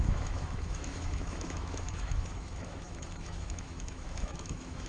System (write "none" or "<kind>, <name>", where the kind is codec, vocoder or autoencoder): autoencoder, DAC-VAE